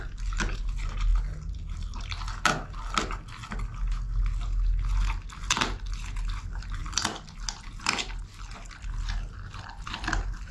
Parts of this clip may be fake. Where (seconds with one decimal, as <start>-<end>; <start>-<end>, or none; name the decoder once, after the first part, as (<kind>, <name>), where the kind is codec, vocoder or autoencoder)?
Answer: none